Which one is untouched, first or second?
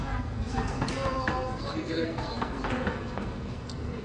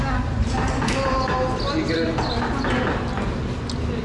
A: second